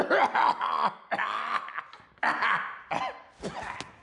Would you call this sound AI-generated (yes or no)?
no